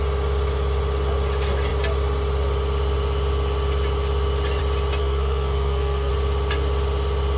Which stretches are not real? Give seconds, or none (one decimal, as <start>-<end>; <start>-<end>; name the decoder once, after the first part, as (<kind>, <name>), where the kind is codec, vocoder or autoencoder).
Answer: 5.0-6.1 (codec, SNAC)